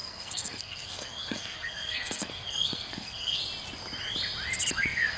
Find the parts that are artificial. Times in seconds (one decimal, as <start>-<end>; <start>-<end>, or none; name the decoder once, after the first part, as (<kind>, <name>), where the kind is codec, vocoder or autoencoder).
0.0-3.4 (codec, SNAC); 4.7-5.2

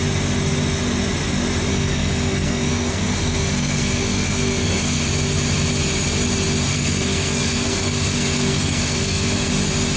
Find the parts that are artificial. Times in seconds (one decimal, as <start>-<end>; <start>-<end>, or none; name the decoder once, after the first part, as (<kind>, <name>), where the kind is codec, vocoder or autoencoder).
1.7-5.0 (codec, SNAC); 6.7-9.5

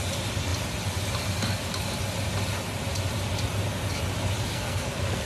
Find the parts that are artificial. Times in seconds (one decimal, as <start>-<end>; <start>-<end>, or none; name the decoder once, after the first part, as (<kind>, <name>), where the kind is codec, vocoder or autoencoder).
4.5-5.3 (codec, SNAC)